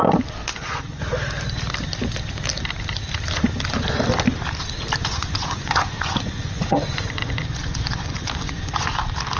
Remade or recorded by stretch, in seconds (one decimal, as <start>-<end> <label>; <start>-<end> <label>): 0.0-0.5 recorded; 0.5-1.0 remade; 1.0-5.0 recorded; 5.0-8.9 remade; 8.9-9.4 recorded